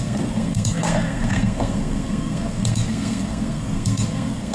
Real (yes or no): no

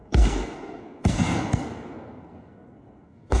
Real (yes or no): no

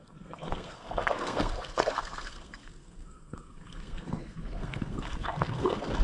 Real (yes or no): no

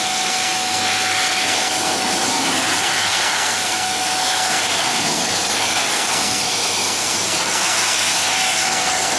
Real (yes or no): no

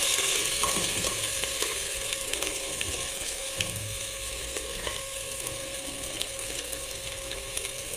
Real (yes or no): no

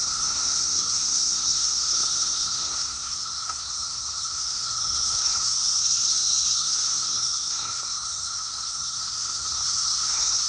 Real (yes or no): no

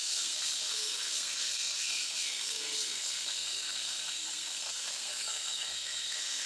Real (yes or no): no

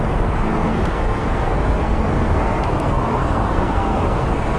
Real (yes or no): no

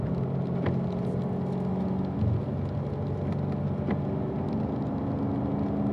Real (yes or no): yes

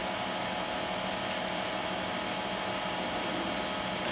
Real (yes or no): yes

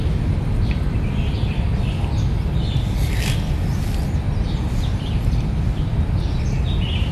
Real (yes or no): yes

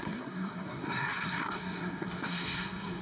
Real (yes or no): no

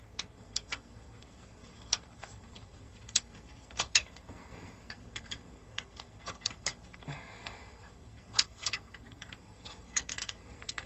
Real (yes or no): no